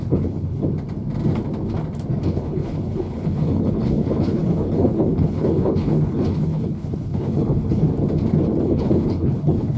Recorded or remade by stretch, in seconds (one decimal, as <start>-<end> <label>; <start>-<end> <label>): 0.0-0.6 remade; 0.6-2.3 recorded; 2.3-7.9 remade; 7.9-8.6 recorded; 8.6-9.8 remade